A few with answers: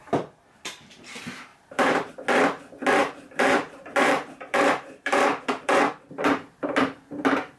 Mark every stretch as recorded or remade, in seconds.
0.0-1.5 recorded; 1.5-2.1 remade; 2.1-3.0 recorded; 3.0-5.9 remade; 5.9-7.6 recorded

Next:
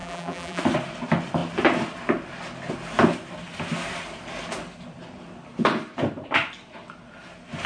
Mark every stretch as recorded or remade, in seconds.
0.0-0.6 remade; 0.6-7.7 recorded

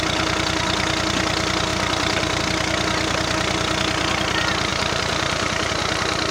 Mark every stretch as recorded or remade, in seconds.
0.0-1.7 recorded; 1.7-2.4 remade; 2.4-4.7 recorded; 4.7-5.7 remade; 5.7-6.3 recorded

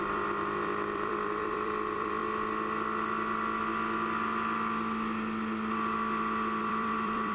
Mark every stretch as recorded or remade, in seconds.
0.0-2.2 remade; 2.2-6.6 recorded; 6.6-7.3 remade

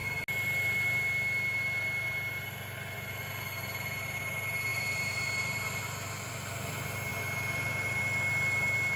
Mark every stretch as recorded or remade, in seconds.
0.0-4.7 recorded; 4.7-5.8 remade; 5.8-9.0 recorded

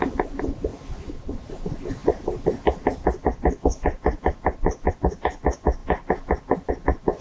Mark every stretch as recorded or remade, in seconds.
0.0-0.7 recorded; 0.7-1.5 remade; 1.5-2.0 recorded; 2.0-4.9 remade; 4.9-7.2 recorded

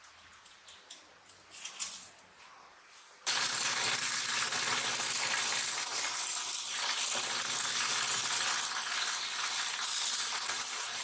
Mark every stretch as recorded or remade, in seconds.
0.0-11.0 recorded